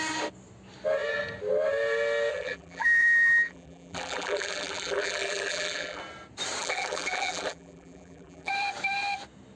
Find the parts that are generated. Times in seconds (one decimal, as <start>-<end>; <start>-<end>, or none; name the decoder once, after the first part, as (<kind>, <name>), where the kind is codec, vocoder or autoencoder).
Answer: 2.3-6.0 (vocoder, BigVGAN v2); 6.6-8.5